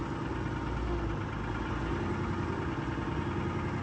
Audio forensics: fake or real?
real